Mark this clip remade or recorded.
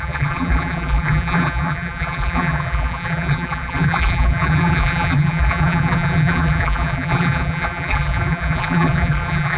remade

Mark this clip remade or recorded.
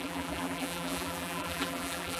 remade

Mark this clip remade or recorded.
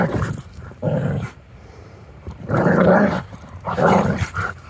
remade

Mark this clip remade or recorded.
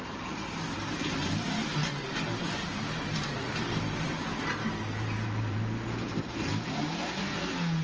remade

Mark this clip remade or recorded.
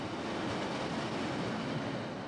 recorded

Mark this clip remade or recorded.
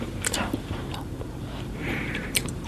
remade